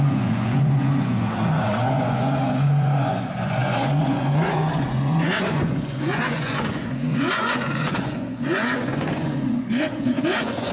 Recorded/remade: remade